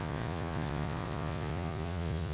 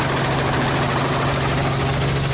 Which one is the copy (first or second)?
first